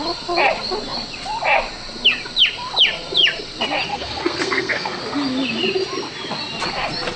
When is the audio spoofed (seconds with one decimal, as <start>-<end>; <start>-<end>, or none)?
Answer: 3.9-5.0